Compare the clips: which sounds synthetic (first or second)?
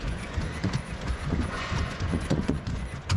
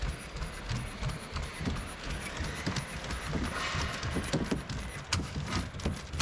first